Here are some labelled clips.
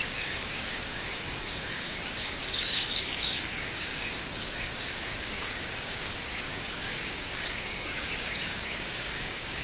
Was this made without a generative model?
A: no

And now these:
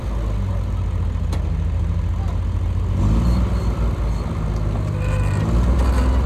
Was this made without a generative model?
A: yes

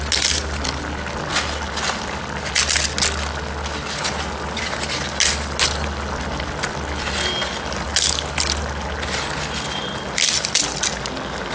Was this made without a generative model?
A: yes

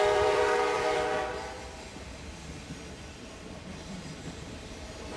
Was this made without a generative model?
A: no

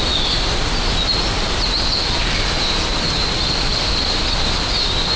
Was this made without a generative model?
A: yes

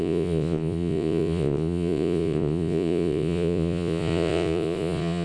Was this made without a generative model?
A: no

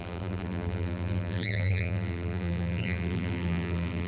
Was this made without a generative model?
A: no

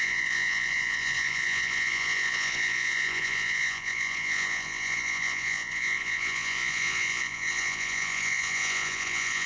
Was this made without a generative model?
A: no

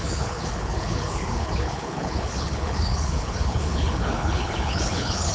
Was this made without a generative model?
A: no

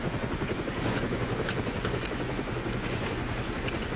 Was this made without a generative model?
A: no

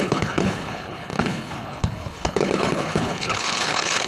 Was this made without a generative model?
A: no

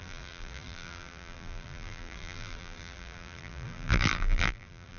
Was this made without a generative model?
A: no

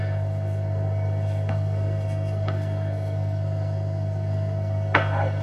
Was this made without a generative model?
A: no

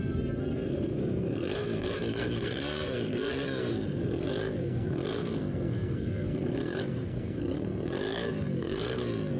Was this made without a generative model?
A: no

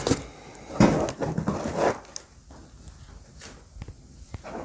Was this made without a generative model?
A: yes